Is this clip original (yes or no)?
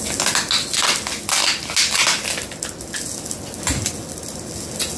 yes